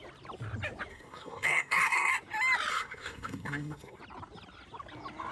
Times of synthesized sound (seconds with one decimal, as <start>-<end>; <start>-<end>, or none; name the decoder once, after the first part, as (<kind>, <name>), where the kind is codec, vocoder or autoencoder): 0.9-2.1 (codec, SNAC); 2.7-4.0